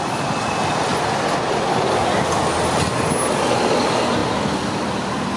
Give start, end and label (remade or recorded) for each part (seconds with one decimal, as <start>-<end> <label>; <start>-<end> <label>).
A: 0.0-5.4 recorded